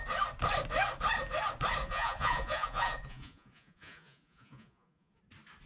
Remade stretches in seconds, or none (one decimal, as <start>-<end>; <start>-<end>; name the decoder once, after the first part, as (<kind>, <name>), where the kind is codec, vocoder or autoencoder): 1.8-5.2 (vocoder, Vocos)